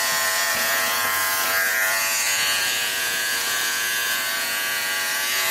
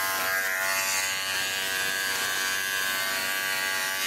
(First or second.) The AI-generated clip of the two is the first